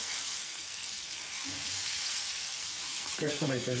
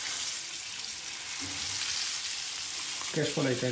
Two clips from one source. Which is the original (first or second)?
second